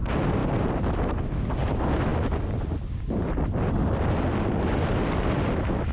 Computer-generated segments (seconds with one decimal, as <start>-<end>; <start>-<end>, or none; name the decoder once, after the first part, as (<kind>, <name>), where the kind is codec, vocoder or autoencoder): none